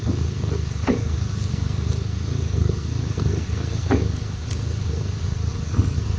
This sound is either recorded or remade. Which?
remade